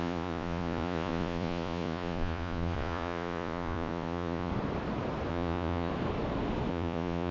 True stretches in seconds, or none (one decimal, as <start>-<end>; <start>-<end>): 4.5-5.3; 5.9-6.7